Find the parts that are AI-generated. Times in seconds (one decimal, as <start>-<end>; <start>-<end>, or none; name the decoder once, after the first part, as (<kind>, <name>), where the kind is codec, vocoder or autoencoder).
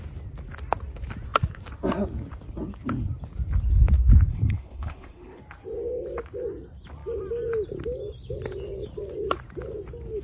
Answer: 4.3-5.4 (codec, HILCodec)